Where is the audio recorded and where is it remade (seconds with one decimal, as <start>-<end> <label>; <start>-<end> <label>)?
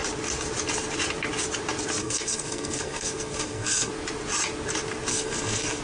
0.0-2.0 recorded; 2.0-3.9 remade; 3.9-5.1 recorded; 5.1-5.8 remade